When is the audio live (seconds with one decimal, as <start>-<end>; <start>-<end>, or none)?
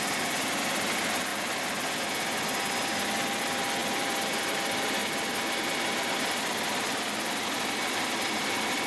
1.3-3.4; 5.0-6.4